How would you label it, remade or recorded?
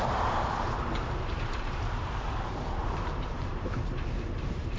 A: remade